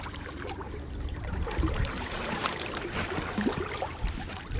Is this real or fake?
fake